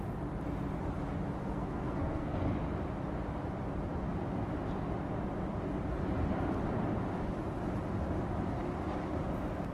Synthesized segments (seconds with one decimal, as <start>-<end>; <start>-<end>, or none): 1.4-2.4